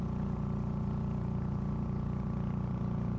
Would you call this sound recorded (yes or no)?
no